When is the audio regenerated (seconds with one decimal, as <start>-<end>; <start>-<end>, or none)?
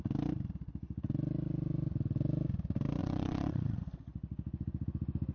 3.0-3.8